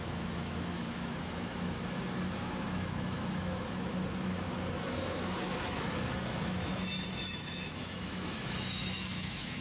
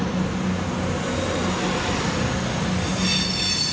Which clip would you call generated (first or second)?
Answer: first